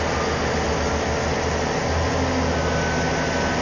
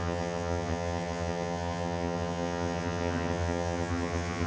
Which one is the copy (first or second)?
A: second